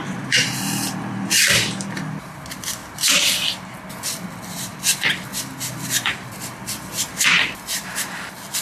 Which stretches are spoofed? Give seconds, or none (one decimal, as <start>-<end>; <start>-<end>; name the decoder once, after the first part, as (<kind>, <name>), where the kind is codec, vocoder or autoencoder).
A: 0.0-1.8 (vocoder, BigVGAN v2); 4.7-6.9